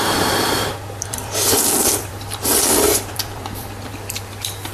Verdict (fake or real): fake